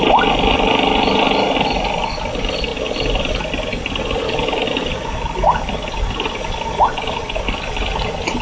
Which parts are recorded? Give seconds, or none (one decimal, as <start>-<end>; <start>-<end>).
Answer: 0.0-8.4